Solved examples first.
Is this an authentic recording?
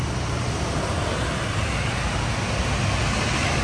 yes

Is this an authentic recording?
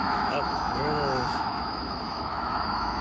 no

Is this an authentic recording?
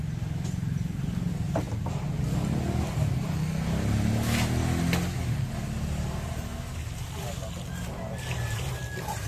yes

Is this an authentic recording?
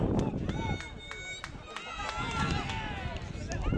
yes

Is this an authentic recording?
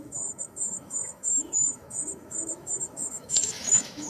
no